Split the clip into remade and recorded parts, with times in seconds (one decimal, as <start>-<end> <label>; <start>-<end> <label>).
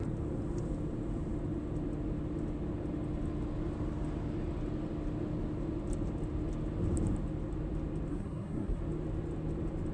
0.0-8.1 recorded; 8.1-8.8 remade; 8.8-9.9 recorded